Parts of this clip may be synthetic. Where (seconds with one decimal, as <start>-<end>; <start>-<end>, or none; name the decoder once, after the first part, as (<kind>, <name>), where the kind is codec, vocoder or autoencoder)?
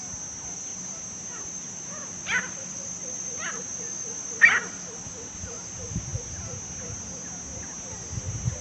none